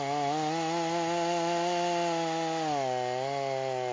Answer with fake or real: real